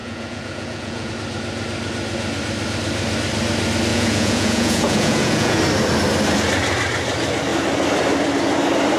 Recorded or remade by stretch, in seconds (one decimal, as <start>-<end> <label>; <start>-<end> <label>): 0.0-1.1 remade; 1.1-3.9 recorded; 3.9-5.6 remade; 5.6-9.0 recorded